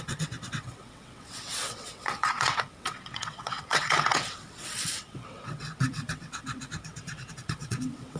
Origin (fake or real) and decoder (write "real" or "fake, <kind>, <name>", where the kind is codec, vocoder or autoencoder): fake, vocoder, WaveNeXt